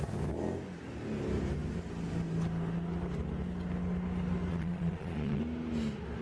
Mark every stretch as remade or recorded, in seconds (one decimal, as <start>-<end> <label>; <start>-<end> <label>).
0.0-4.5 recorded; 4.5-5.4 remade; 5.4-6.2 recorded